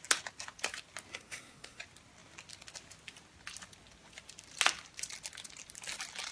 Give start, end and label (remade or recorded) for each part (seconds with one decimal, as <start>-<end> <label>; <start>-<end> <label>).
0.0-1.1 recorded; 1.1-1.8 remade; 1.8-6.3 recorded